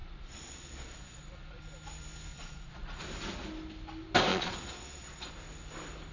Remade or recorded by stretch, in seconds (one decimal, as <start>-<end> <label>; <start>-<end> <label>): 0.0-1.6 remade; 1.6-2.3 recorded; 2.3-3.0 remade; 3.0-4.3 recorded; 4.3-5.3 remade; 5.3-6.1 recorded